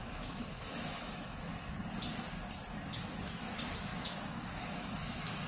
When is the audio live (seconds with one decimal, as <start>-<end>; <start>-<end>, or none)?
1.5-3.0